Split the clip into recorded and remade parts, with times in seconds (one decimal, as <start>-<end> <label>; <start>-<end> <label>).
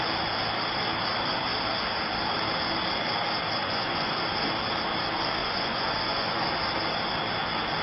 0.0-3.6 recorded; 3.6-4.2 remade; 4.2-5.4 recorded; 5.4-6.5 remade; 6.5-7.8 recorded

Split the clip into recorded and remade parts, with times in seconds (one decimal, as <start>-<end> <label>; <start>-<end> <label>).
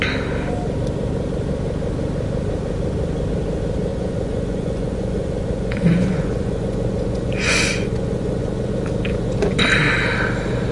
0.0-3.9 recorded; 3.9-8.7 remade; 8.7-9.1 recorded; 9.1-9.6 remade; 9.6-10.7 recorded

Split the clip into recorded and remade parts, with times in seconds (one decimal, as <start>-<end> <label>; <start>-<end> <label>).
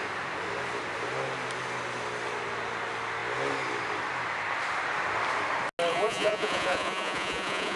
0.0-5.9 recorded; 5.9-7.8 remade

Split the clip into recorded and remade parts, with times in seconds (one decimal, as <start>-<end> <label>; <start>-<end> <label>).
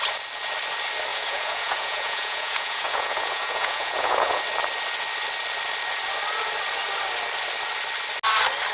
0.0-1.1 recorded; 1.1-4.4 remade; 4.4-8.7 recorded